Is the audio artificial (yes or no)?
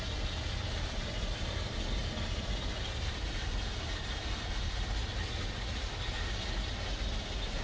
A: no